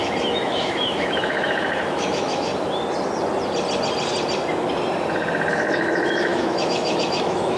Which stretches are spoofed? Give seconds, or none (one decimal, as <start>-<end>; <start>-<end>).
0.0-2.5; 5.5-7.6